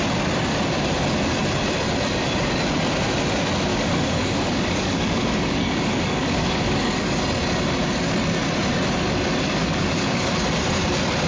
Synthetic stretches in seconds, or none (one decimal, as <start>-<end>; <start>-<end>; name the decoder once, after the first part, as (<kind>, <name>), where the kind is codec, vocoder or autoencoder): 3.7-7.2 (codec, DAC); 9.6-10.3